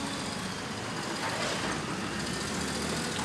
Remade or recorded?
recorded